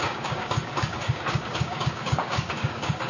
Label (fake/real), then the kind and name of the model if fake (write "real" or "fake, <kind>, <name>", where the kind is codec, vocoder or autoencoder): fake, codec, DAC